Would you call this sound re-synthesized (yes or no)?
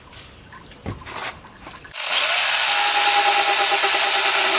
no